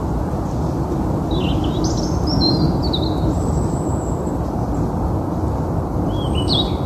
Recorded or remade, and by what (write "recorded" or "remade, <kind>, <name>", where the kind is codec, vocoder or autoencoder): recorded